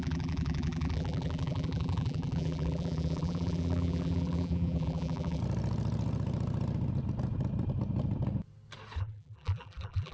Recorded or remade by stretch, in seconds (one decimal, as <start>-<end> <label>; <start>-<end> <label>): 0.0-5.4 remade; 5.4-9.0 recorded; 9.0-10.1 remade